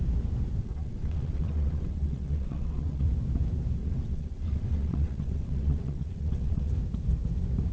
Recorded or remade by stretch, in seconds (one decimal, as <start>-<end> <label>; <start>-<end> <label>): 0.0-0.6 recorded; 0.6-3.1 remade; 3.1-3.8 recorded; 3.8-6.7 remade; 6.7-7.7 recorded